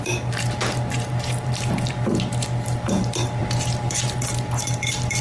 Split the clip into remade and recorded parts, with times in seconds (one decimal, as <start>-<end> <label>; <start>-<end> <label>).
0.0-5.2 remade